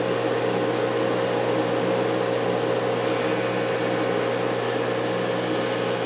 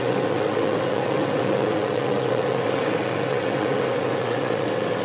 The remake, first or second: second